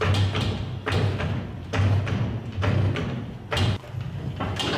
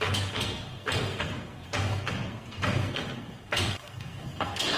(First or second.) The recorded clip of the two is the first